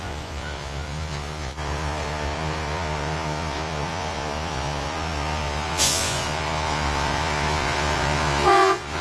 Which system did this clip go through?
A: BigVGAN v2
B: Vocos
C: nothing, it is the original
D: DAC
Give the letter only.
B